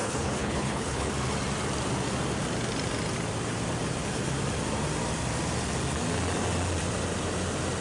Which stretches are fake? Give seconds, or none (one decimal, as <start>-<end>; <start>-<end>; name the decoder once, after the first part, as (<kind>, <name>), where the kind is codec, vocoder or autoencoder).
0.0-1.1 (codec, HILCodec)